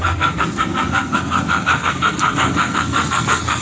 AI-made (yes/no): yes